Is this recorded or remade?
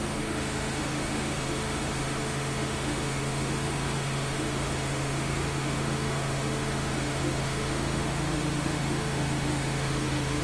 remade